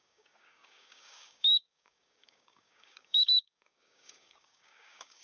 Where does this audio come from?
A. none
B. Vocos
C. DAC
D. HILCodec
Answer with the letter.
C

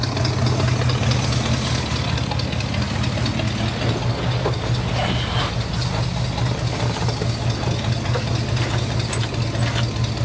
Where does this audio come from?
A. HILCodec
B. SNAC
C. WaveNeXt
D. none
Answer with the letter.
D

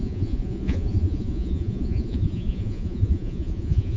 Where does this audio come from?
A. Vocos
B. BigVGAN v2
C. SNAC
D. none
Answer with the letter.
A